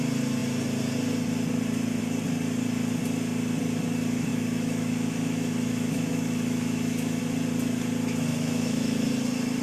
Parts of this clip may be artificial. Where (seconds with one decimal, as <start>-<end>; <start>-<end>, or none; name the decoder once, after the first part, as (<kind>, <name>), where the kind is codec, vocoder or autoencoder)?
4.3-7.2 (autoencoder, DAC-VAE); 8.3-9.1